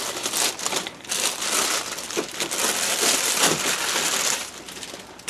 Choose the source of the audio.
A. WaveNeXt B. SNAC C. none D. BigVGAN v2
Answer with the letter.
C